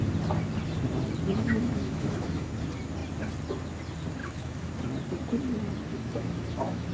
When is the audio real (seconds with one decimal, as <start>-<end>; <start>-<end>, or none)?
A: 0.0-1.3; 2.5-4.2; 4.7-5.9